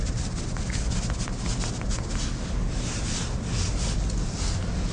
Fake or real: real